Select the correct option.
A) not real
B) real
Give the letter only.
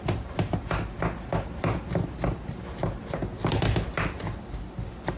B